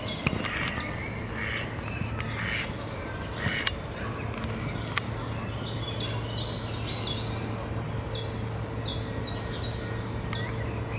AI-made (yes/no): no